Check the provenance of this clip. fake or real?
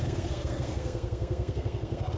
fake